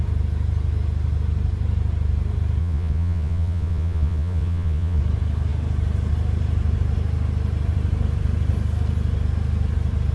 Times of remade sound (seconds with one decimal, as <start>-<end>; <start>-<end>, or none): 2.6-5.0